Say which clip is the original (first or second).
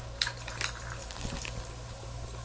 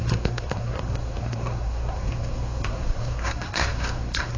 first